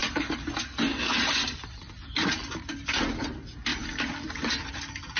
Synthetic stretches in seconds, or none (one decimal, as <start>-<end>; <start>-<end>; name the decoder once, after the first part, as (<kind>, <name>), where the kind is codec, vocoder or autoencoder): 0.0-0.5 (vocoder, BigVGAN v2); 0.9-2.0; 3.7-4.7